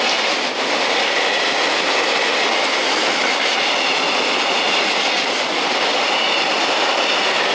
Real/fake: real